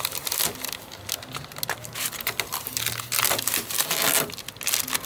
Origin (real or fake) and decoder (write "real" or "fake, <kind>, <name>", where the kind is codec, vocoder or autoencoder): real